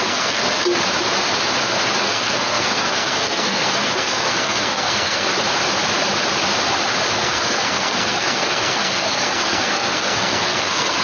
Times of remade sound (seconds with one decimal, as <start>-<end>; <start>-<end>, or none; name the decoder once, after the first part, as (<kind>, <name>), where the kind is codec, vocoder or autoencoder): 0.0-0.4 (codec, SNAC); 2.0-5.3; 7.1-11.0